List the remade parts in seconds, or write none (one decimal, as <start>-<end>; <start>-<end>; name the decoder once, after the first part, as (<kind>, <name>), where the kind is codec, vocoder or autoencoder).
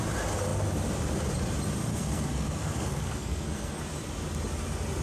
1.9-3.8 (codec, SNAC)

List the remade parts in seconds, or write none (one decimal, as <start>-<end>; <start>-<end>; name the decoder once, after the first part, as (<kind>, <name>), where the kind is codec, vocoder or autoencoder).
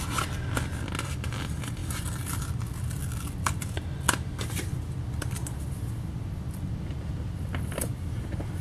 none